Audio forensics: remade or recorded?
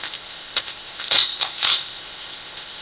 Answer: remade